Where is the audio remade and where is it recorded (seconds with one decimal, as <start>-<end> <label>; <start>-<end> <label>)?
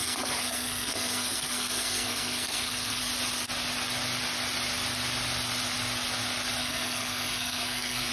0.0-3.0 remade; 3.0-6.6 recorded; 6.6-8.1 remade